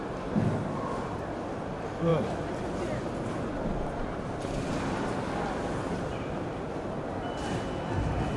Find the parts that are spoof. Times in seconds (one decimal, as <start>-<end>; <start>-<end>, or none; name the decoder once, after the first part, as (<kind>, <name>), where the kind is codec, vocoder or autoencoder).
none